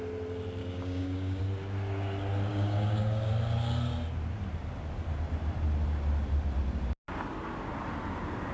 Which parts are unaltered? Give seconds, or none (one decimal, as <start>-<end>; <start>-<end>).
0.0-0.6; 1.4-2.5; 3.3-8.5